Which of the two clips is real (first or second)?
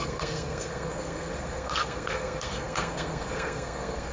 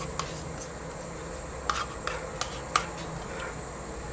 second